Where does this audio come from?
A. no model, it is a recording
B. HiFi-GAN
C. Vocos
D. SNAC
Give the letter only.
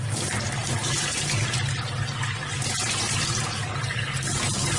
A